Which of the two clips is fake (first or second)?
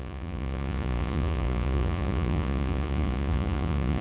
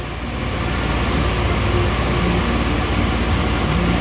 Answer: first